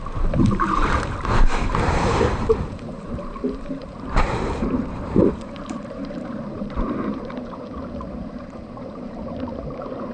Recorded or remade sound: remade